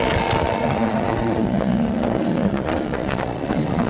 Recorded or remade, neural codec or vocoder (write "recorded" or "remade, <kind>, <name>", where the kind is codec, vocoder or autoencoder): remade, vocoder, Vocos